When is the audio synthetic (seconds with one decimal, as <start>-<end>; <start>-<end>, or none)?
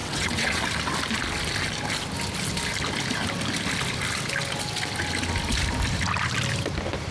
0.0-0.6